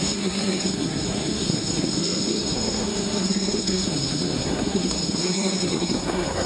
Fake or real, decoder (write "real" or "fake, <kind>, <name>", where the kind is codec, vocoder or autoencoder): fake, codec, SNAC